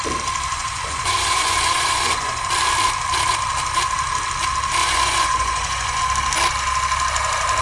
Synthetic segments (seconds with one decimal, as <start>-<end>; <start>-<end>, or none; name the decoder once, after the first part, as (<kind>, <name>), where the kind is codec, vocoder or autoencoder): 0.5-2.4 (vocoder, Vocos); 4.8-6.0